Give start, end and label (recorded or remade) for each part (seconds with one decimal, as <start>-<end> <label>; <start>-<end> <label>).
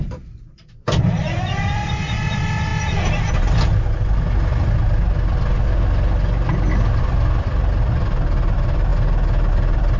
0.0-2.7 remade; 2.7-7.0 recorded; 7.0-8.9 remade; 8.9-9.5 recorded; 9.5-10.0 remade